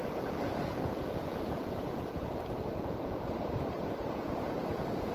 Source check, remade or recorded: remade